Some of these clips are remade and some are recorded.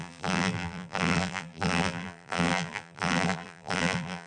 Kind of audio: remade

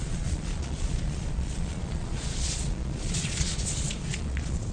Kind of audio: remade